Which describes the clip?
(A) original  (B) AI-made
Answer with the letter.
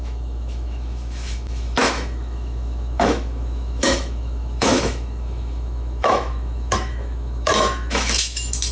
B